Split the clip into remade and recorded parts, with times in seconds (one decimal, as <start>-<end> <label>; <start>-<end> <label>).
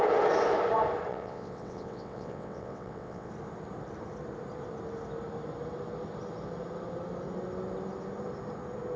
0.0-1.1 recorded; 1.1-3.3 remade; 3.3-9.0 recorded